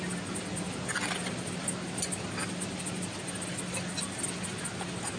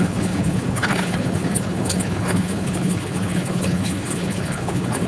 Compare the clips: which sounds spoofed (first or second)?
second